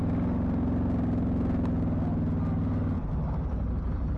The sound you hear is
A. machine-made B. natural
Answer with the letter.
B